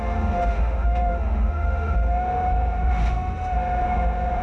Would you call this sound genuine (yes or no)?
no